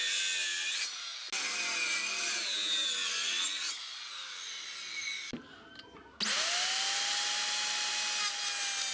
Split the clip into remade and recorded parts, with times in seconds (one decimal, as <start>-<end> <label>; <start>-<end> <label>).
0.0-8.9 recorded